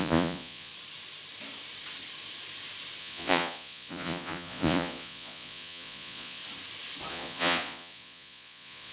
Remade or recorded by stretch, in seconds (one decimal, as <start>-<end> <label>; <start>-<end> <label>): 0.0-0.7 remade; 0.7-3.0 recorded; 3.0-6.4 remade; 6.4-7.1 recorded; 7.1-8.9 remade